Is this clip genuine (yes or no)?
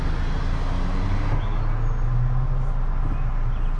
yes